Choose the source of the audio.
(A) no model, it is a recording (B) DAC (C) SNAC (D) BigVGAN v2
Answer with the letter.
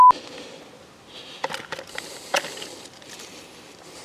A